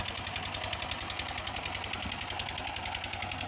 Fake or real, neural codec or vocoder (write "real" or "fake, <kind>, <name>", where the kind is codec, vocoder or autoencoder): real